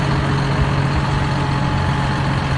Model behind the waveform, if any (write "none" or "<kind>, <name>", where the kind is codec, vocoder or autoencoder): none